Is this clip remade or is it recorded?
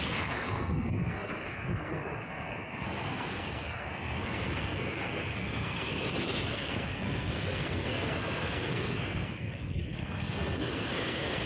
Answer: remade